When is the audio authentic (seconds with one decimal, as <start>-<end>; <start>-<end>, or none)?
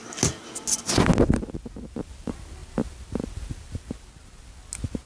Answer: 0.0-5.1